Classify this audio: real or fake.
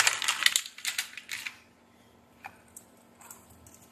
fake